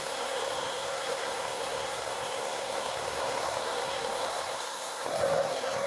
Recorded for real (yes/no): no